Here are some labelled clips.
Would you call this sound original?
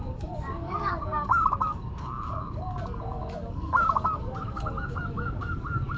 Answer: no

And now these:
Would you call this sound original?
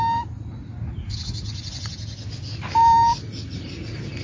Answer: yes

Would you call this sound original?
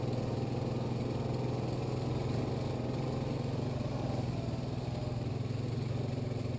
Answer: yes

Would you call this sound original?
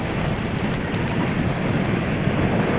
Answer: yes